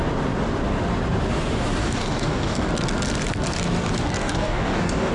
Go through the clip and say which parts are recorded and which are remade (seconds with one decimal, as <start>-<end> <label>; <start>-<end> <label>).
0.0-1.8 recorded; 1.8-2.7 remade; 2.7-4.2 recorded; 4.2-5.1 remade